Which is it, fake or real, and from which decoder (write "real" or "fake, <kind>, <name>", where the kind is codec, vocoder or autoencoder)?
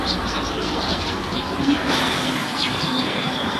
fake, codec, SNAC